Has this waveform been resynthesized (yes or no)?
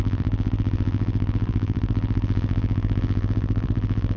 yes